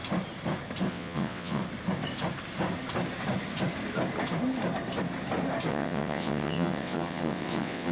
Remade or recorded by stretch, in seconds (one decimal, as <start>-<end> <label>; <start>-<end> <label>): 0.0-0.9 recorded; 0.9-1.6 remade; 1.6-5.7 recorded; 5.7-7.9 remade